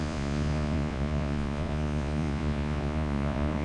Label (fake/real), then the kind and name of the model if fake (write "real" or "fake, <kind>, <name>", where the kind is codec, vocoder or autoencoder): fake, vocoder, Vocos